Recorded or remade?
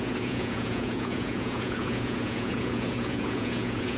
remade